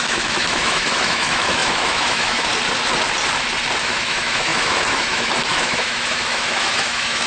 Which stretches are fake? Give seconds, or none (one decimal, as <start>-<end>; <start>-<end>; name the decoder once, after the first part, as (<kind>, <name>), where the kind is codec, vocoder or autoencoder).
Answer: 0.0-2.5 (autoencoder, DAC-VAE); 3.8-7.3